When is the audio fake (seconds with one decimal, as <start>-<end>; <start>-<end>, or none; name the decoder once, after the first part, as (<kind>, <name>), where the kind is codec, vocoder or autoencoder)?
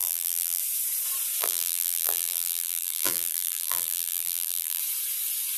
0.0-0.6 (vocoder, BigVGAN v2); 1.4-4.8